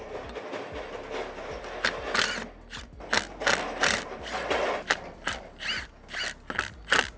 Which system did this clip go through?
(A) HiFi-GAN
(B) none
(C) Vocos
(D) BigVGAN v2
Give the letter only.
B